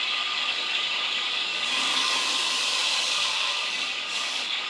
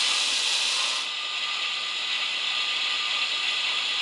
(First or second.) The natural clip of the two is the second